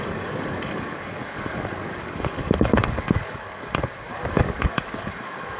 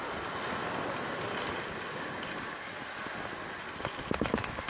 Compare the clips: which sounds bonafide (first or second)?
second